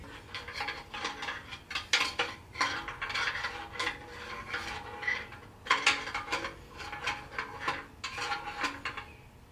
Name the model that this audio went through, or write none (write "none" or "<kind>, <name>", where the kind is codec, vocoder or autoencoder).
none